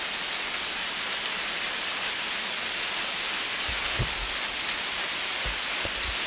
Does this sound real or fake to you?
real